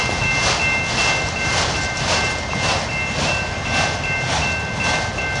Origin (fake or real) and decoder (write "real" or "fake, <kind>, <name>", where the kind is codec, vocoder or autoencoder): real